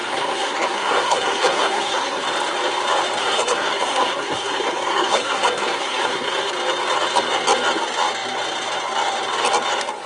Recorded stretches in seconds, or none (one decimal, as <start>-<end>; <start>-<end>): 2.2-3.2; 6.5-10.1